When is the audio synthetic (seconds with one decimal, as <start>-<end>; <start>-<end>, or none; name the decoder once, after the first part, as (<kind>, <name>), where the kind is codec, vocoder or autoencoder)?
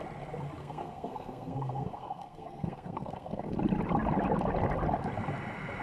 0.6-3.5 (codec, SNAC)